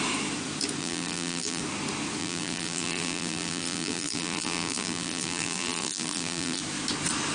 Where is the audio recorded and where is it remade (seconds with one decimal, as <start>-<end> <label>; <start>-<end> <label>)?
0.0-0.8 recorded; 0.8-1.6 remade; 1.6-2.2 recorded; 2.2-6.6 remade; 6.6-7.3 recorded